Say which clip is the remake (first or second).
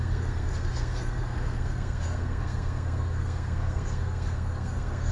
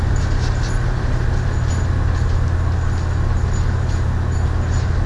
first